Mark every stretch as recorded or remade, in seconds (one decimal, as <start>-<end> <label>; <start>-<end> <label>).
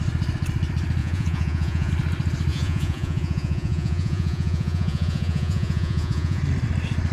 0.0-1.0 recorded; 1.0-1.9 remade; 1.9-2.5 recorded; 2.5-6.4 remade; 6.4-7.1 recorded